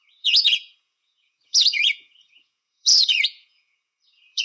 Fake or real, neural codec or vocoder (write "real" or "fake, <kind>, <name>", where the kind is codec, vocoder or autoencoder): fake, vocoder, Vocos